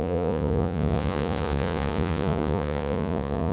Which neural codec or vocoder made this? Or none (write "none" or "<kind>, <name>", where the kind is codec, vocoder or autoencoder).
vocoder, Vocos